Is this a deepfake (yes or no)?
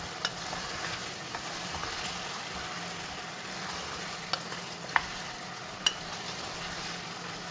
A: no